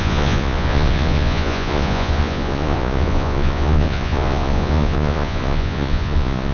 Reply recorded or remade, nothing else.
remade